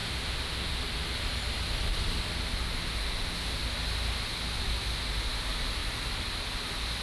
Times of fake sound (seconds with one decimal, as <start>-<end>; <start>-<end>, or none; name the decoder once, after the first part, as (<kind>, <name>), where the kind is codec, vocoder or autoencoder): 0.0-0.8 (autoencoder, DAC-VAE); 3.0-3.6